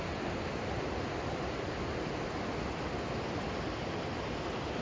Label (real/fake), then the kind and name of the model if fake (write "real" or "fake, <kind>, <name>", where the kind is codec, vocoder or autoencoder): real